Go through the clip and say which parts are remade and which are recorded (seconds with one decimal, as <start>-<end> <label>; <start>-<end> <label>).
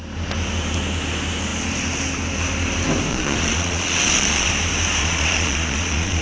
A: 0.0-3.1 recorded; 3.1-4.5 remade; 4.5-5.0 recorded; 5.0-6.2 remade